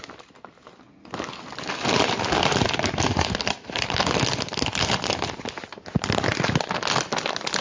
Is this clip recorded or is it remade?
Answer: recorded